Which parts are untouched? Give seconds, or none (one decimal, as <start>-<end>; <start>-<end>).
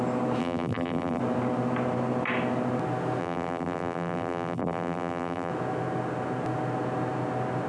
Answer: 0.0-0.4; 1.2-3.2; 5.5-7.7